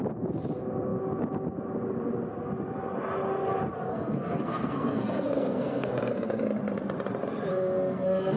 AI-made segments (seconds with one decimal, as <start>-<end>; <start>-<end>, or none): 3.9-6.4; 7.5-8.4